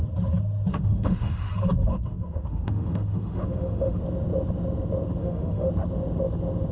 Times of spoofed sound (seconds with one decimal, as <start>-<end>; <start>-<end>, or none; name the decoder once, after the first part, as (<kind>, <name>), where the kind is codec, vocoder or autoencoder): 0.7-1.5 (autoencoder, DAC-VAE); 1.9-4.0; 5.2-5.7